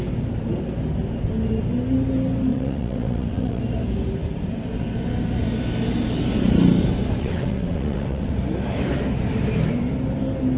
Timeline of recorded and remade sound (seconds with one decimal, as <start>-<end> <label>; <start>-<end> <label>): 0.0-2.5 recorded; 2.5-3.6 remade; 3.6-7.2 recorded; 7.2-8.3 remade; 8.3-10.6 recorded